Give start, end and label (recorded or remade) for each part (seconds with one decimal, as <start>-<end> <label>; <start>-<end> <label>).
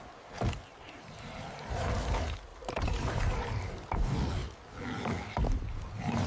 0.0-0.7 recorded; 0.7-2.0 remade; 2.0-2.5 recorded; 2.5-3.7 remade; 3.7-6.3 recorded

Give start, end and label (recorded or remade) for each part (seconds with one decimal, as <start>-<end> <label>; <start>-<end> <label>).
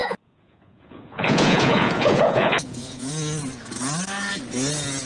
0.0-3.1 remade; 3.1-5.1 recorded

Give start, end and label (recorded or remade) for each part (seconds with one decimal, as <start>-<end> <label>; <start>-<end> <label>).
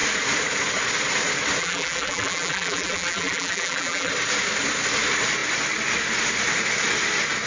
0.0-1.6 recorded; 1.6-4.1 remade; 4.1-7.5 recorded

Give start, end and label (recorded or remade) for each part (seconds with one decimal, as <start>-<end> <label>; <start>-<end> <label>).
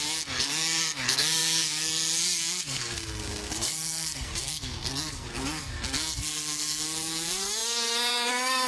0.0-8.7 remade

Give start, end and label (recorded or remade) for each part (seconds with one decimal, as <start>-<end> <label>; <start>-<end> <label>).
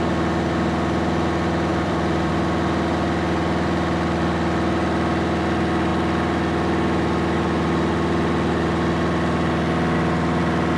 0.0-1.7 recorded; 1.7-2.3 remade; 2.3-10.8 recorded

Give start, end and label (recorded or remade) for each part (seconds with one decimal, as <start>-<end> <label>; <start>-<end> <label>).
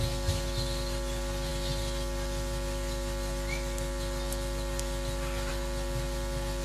0.0-6.6 recorded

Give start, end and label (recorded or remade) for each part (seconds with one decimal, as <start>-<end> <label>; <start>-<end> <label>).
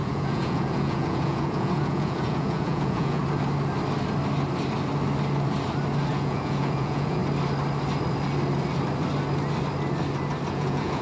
0.0-3.2 remade; 3.2-6.1 recorded; 6.1-7.2 remade; 7.2-10.5 recorded; 10.5-11.0 remade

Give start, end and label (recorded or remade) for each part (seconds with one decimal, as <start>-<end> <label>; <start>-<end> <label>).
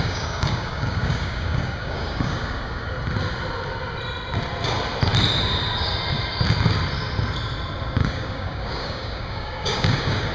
0.0-2.9 remade; 2.9-8.0 recorded; 8.0-10.3 remade